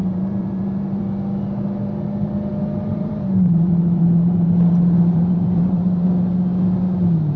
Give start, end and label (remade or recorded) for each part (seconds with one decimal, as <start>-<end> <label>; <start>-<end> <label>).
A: 0.0-1.0 remade; 1.0-2.9 recorded; 2.9-6.1 remade; 6.1-7.4 recorded